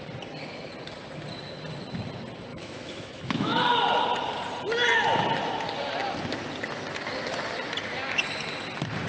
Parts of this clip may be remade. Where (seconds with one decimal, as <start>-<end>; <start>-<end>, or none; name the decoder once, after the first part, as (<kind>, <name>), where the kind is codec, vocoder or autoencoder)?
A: 2.5-3.6 (autoencoder, DAC-VAE)

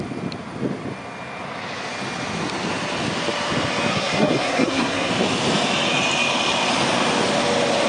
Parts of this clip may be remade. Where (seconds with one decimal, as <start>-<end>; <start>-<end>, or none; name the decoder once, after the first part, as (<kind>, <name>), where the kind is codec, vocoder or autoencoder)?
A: 3.9-5.1 (codec, SNAC)

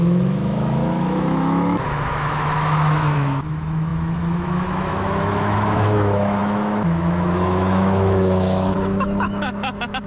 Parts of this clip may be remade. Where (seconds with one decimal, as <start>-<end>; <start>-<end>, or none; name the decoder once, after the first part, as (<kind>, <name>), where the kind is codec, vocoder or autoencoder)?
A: 0.0-10.1 (autoencoder, DAC-VAE)

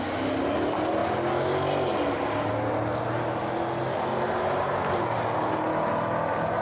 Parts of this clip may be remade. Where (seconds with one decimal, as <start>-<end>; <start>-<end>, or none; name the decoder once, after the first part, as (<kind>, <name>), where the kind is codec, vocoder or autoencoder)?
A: none

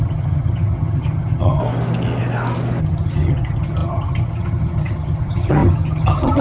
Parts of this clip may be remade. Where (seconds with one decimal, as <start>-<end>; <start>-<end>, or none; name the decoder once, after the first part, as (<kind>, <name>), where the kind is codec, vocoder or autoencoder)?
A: 0.0-1.6 (vocoder, HiFi-GAN); 2.8-6.4